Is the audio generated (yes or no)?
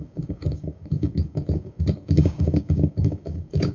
yes